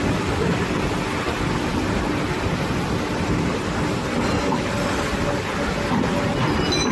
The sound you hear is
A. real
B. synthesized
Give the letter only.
A